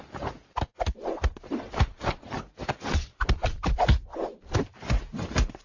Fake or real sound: real